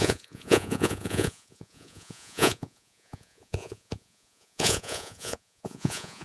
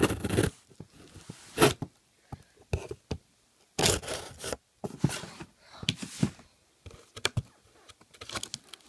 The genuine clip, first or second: second